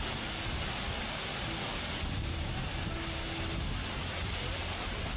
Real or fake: real